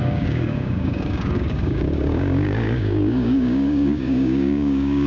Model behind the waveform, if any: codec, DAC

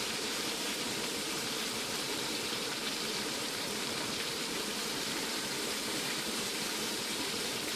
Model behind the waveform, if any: vocoder, BigVGAN v2